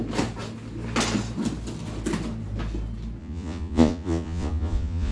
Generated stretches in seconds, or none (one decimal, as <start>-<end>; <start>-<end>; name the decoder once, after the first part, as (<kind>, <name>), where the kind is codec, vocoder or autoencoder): 3.2-5.1 (vocoder, Vocos)